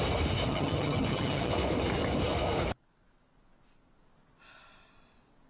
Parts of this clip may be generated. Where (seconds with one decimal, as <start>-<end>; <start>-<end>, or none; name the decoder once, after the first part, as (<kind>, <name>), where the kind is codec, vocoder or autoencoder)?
0.5-1.5 (vocoder, HiFi-GAN)